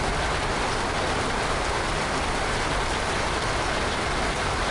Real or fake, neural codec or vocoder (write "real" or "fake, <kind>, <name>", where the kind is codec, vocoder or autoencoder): real